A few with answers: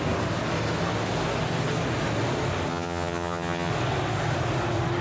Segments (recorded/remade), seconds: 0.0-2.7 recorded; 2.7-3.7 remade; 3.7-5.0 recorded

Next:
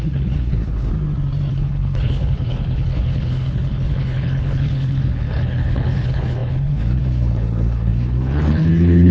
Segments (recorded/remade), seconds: 0.0-0.9 remade; 0.9-1.5 recorded; 1.5-9.1 remade

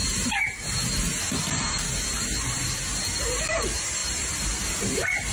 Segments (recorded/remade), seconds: 0.0-3.2 recorded; 3.2-5.3 remade

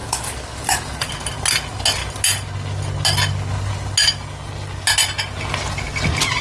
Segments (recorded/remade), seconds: 0.0-1.1 remade; 1.1-6.4 recorded

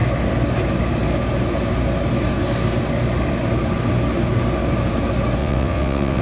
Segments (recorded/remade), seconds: 0.0-5.4 recorded; 5.4-6.2 remade